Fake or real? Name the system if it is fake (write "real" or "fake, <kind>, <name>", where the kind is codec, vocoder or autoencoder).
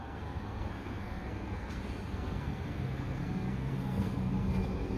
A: fake, codec, SNAC